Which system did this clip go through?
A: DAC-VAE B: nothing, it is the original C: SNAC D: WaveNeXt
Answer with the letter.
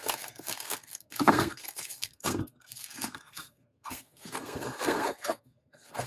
C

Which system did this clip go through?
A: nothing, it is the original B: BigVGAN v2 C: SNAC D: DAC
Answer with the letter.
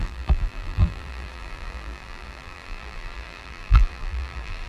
B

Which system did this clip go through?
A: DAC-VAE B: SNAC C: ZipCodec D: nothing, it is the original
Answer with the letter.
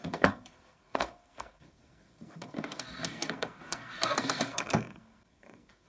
B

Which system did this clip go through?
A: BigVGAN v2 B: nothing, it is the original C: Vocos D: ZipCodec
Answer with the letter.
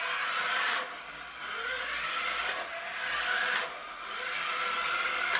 B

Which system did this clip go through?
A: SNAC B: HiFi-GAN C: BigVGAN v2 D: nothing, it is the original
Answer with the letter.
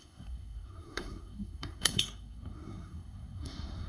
A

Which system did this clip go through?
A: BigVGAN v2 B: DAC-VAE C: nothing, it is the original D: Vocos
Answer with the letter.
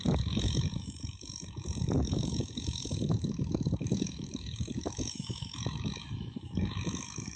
B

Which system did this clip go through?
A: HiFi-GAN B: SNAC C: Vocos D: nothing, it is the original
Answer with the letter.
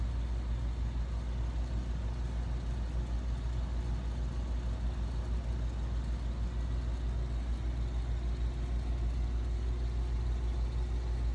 D